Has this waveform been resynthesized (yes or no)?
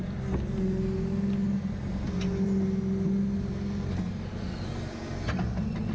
no